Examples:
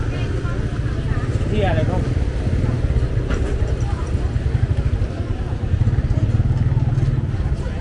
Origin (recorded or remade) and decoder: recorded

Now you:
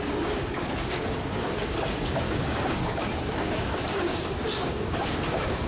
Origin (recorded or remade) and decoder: remade, codec, DAC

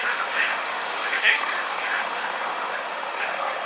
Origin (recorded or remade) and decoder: remade, autoencoder, DAC-VAE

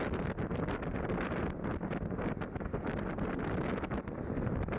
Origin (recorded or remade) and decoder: recorded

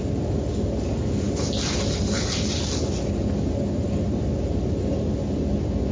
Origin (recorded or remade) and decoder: recorded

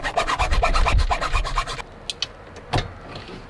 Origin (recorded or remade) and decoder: recorded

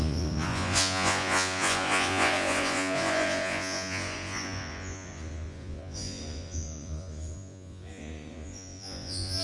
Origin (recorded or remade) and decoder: remade, vocoder, Vocos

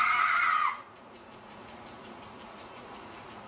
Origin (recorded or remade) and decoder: remade, vocoder, Vocos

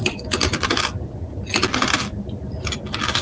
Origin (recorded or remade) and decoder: recorded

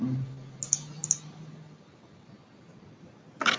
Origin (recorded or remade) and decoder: recorded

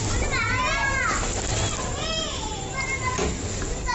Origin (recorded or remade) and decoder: recorded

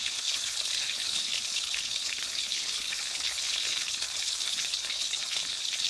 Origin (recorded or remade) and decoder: remade, codec, HILCodec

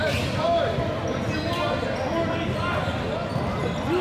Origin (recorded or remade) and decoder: recorded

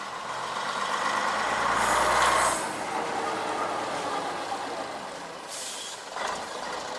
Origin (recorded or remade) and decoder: recorded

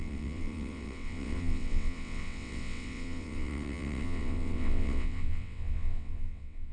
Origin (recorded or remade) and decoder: remade, vocoder, WaveNeXt